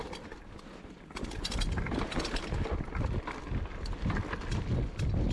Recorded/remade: recorded